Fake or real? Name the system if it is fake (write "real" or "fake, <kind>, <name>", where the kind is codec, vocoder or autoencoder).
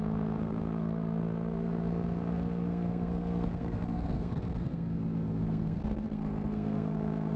fake, codec, SNAC